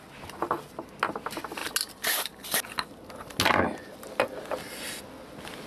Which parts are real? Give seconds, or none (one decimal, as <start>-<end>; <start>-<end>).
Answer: 0.0-5.7